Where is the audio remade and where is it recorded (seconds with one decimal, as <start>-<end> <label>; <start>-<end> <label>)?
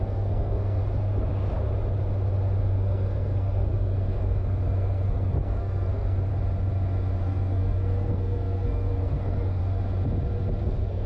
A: 0.0-0.8 remade; 0.8-2.6 recorded; 2.6-6.3 remade; 6.3-7.2 recorded; 7.2-9.6 remade; 9.6-10.6 recorded; 10.6-11.1 remade